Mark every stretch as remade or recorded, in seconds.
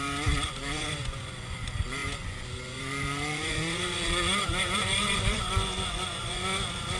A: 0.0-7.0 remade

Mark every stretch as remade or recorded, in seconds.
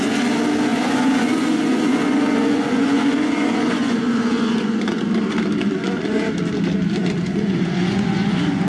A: 0.0-0.7 recorded; 0.7-5.0 remade; 5.0-5.6 recorded; 5.6-6.4 remade; 6.4-7.0 recorded; 7.0-8.7 remade